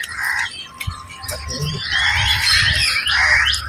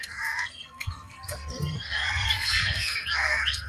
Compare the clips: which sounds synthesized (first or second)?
second